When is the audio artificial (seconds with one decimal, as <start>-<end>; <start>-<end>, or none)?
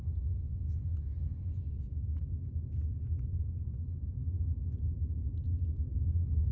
none